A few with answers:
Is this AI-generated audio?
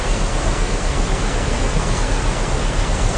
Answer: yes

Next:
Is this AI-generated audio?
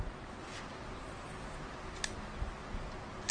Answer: no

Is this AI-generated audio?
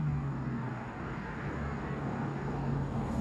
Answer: yes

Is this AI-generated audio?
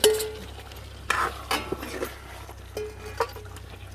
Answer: no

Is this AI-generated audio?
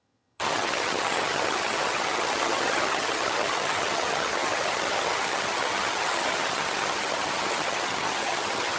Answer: yes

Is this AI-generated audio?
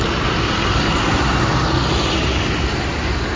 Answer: no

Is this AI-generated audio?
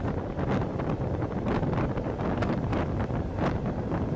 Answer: no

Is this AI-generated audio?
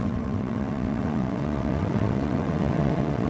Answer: yes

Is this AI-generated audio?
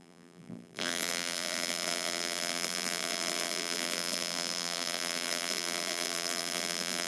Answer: yes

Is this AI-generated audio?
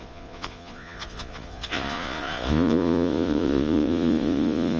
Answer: yes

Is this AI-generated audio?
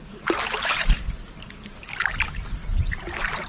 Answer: no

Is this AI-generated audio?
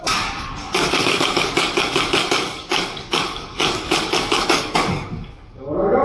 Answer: yes